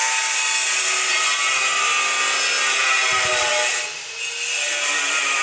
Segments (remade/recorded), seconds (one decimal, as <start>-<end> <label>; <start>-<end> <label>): 0.0-5.4 recorded